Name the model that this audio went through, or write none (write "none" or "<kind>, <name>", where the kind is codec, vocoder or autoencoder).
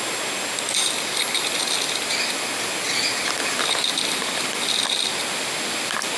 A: none